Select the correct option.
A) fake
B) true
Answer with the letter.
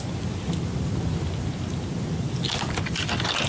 B